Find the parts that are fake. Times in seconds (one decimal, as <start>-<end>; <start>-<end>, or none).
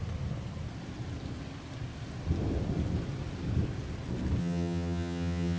4.4-5.6